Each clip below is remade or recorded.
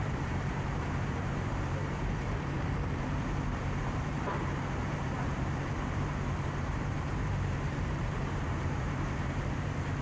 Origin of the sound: remade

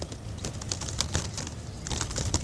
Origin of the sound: recorded